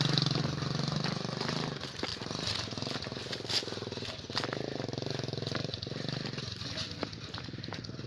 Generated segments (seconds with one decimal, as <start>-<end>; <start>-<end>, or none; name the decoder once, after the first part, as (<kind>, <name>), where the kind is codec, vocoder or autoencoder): none